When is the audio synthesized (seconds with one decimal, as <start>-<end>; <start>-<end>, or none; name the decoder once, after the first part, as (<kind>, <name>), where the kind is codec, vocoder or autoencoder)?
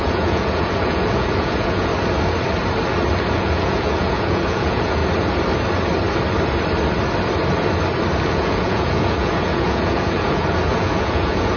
0.0-1.9 (vocoder, Vocos); 3.3-5.0; 8.3-11.6